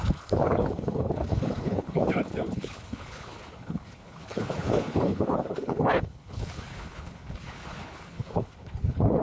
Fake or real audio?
fake